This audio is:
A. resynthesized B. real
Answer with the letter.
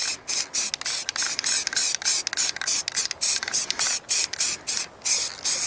B